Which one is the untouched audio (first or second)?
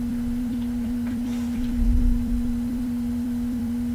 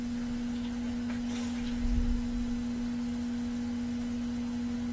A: second